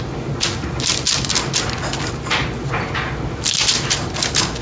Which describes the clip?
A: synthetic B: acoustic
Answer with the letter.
B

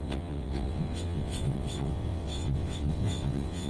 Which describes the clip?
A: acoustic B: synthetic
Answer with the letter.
B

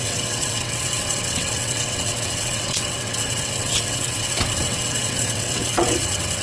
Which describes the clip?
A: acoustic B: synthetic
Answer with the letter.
B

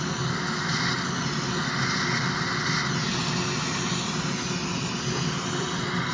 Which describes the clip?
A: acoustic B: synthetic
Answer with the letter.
A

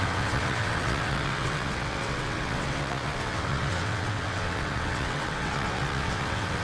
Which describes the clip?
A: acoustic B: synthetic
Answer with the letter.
B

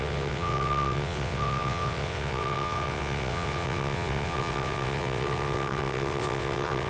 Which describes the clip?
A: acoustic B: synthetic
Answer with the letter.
B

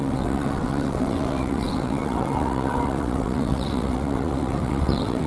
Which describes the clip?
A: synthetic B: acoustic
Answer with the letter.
A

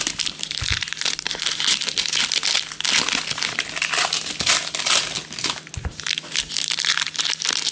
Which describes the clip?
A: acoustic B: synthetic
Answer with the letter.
A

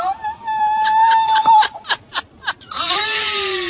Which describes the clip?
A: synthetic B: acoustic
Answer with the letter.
B